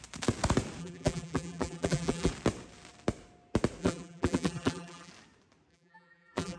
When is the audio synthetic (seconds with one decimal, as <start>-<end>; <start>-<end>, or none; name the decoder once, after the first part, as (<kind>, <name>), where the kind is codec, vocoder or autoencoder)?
0.8-2.3 (vocoder, BigVGAN v2); 3.8-5.1; 5.7-6.6